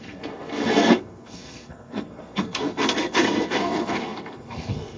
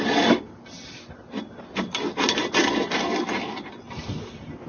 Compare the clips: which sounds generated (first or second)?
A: first